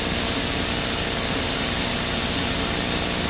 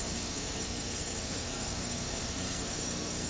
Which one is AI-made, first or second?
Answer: second